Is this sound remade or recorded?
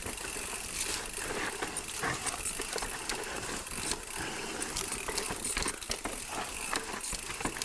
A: recorded